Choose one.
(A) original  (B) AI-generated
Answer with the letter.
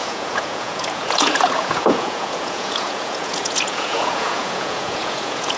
B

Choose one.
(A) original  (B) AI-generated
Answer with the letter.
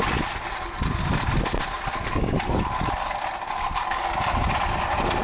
A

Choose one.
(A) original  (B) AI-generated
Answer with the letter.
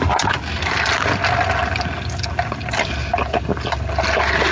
A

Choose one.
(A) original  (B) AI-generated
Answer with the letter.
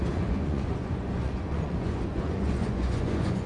B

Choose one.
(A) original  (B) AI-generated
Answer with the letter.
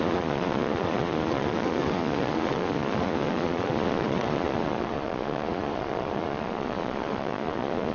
B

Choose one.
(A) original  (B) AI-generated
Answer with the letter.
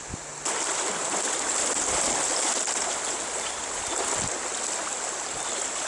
A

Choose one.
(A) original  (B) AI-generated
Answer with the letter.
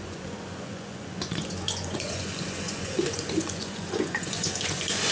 B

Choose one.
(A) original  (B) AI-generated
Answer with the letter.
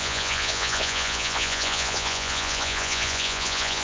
B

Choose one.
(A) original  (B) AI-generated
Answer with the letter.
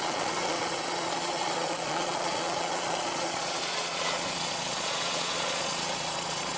B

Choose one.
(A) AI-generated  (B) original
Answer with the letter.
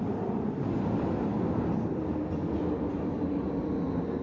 B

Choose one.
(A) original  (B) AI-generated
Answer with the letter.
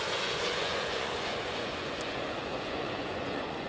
B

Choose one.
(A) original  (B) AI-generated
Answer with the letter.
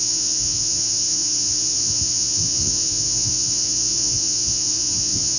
B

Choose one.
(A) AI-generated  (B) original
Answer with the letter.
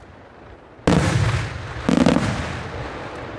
B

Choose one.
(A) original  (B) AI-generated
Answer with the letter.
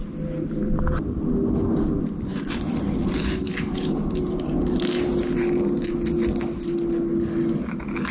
A